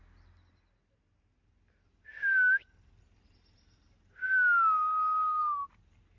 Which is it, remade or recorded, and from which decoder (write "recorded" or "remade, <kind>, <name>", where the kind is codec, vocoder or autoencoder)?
recorded